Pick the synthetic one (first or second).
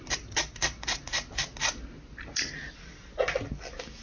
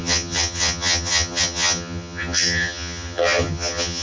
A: second